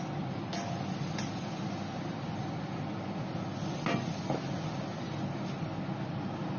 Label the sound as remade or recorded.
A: recorded